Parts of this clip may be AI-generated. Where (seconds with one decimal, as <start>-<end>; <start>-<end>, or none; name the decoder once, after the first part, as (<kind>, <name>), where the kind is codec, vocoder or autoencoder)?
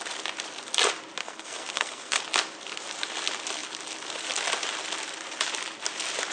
1.2-2.2 (codec, SNAC)